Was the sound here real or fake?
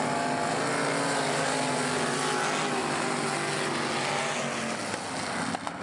real